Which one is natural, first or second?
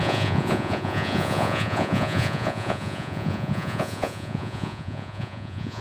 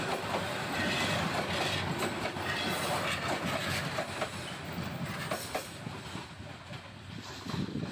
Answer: second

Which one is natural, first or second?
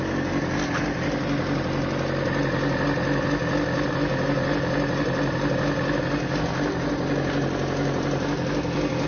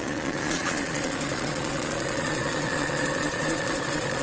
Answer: first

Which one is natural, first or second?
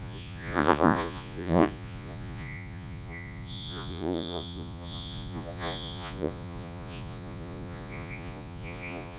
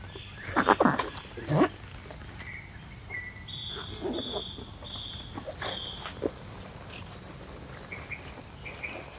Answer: second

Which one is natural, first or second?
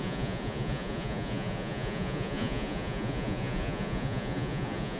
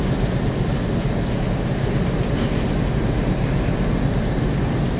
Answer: second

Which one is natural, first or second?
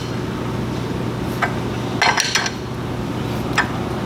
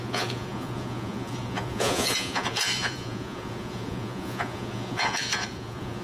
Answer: first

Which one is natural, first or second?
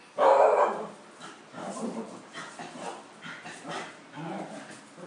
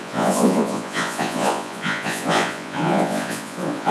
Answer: first